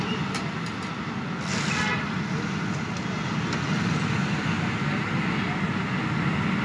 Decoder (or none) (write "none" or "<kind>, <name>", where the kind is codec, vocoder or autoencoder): none